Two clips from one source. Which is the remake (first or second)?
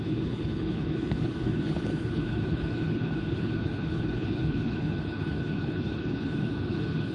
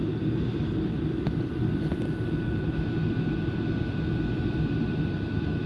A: first